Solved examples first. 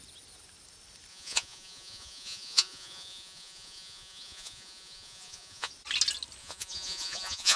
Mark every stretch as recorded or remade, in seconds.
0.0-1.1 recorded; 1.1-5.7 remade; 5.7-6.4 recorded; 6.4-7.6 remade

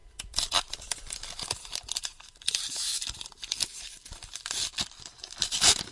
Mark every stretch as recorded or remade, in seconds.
0.0-0.7 remade; 0.7-2.0 recorded; 2.0-5.2 remade; 5.2-5.9 recorded

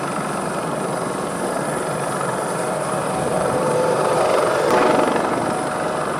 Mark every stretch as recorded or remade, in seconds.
0.0-3.3 recorded; 3.3-4.1 remade; 4.1-6.2 recorded

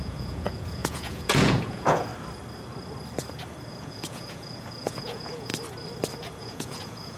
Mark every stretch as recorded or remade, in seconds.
0.0-2.1 remade; 2.1-3.7 recorded; 3.7-5.5 remade; 5.5-6.4 recorded; 6.4-7.2 remade

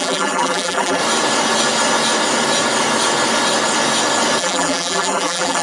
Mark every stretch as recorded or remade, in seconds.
0.0-1.0 remade; 1.0-4.4 recorded; 4.4-5.6 remade

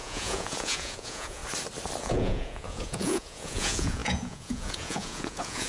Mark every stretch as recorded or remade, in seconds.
0.0-1.4 remade; 1.4-2.0 recorded; 2.0-5.7 remade